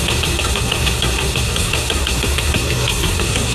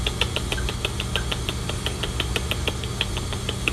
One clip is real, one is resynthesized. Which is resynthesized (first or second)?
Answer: first